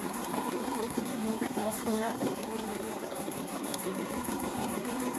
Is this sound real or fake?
fake